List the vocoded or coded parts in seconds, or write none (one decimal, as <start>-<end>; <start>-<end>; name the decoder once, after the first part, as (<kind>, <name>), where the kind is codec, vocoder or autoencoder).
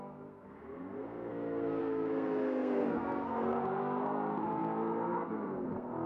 0.0-6.1 (codec, SNAC)